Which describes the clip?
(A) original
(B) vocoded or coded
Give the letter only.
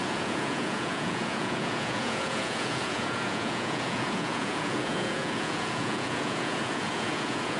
B